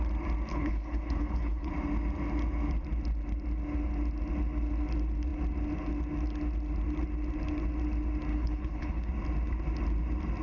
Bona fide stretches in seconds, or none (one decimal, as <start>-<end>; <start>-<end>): 0.0-0.5; 1.7-8.3; 9.1-10.4